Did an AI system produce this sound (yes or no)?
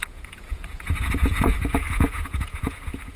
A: yes